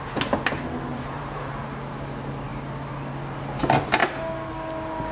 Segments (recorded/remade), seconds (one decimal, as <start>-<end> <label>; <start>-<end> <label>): 0.0-0.9 recorded; 0.9-1.4 remade; 1.4-5.1 recorded